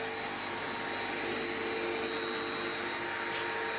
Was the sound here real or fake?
real